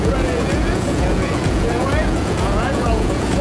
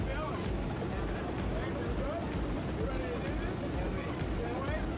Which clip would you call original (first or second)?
second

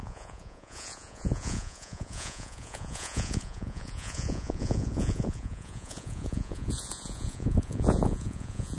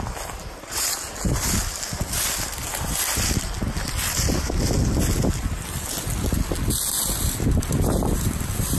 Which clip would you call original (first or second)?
second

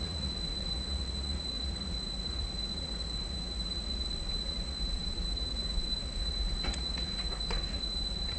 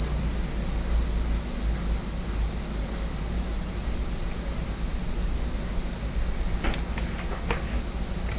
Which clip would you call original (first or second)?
second